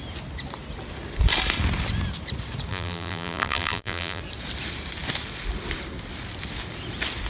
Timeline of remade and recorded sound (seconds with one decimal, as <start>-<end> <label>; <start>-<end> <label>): 0.0-2.7 recorded; 2.7-4.2 remade; 4.2-7.3 recorded